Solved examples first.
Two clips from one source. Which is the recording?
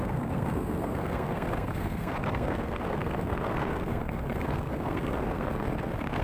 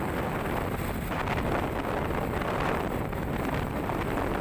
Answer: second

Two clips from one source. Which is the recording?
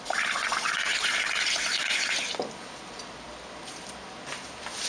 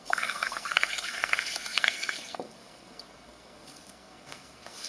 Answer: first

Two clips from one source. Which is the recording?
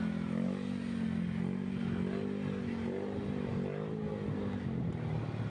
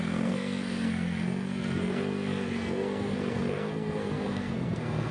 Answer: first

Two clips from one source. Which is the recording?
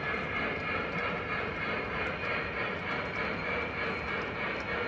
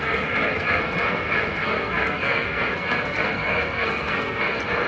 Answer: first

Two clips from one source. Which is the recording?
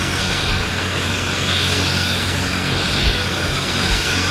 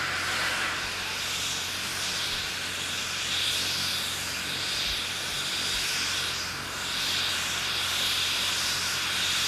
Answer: second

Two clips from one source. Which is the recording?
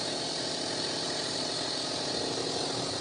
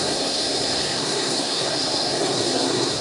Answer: first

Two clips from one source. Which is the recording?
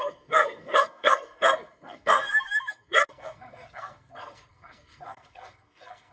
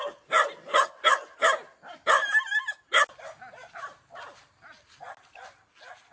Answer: second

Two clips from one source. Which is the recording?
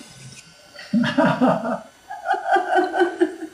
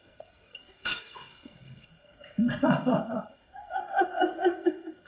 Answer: first